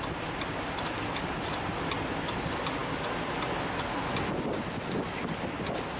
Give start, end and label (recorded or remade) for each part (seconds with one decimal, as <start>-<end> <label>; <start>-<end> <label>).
0.0-6.0 recorded